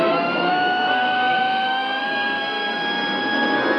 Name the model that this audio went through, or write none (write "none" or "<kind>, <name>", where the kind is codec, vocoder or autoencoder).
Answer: codec, SNAC